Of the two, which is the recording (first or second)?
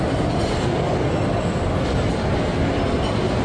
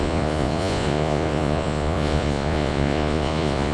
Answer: first